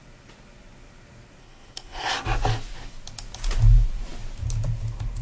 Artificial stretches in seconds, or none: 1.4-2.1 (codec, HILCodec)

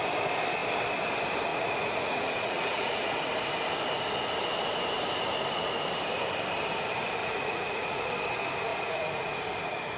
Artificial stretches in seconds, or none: 1.5-3.2 (vocoder, Vocos); 7.2-8.1; 8.7-9.3

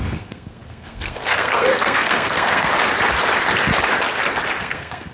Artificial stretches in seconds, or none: 0.0-2.7 (codec, SNAC); 4.6-5.1